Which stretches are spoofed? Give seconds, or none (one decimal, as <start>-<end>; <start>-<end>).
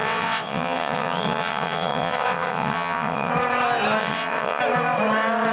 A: 0.0-3.3; 4.0-4.6